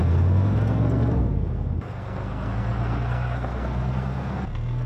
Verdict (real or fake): fake